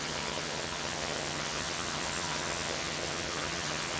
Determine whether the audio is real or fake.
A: fake